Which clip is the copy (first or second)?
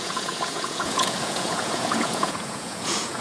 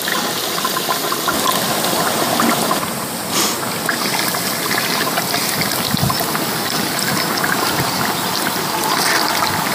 first